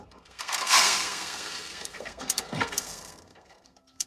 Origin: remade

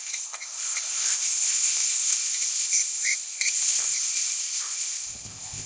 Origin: remade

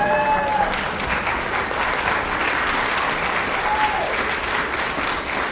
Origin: recorded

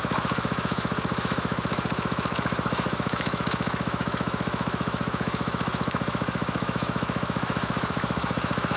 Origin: remade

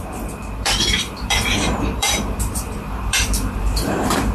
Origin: remade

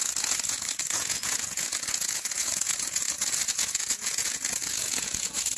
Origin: remade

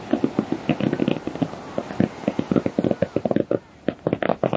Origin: recorded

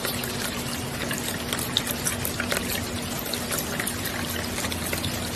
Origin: recorded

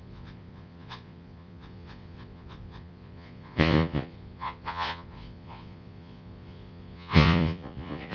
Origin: remade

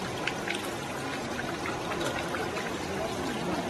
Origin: recorded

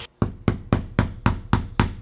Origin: recorded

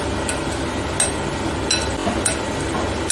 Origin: recorded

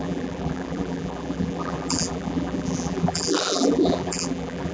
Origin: remade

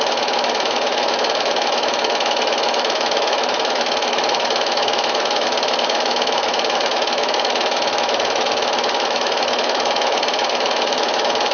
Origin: remade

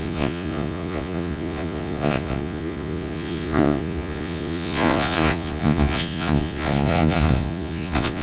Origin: remade